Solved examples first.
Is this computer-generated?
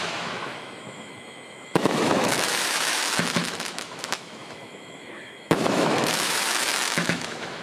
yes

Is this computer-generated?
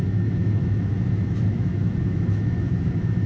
yes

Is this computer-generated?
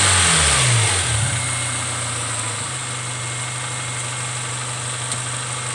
no